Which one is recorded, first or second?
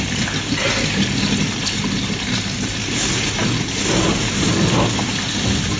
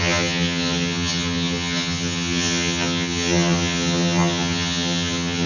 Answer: first